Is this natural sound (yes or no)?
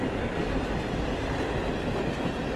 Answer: yes